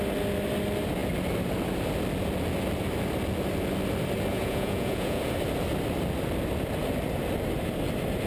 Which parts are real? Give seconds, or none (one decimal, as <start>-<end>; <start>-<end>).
0.0-4.3; 5.2-8.3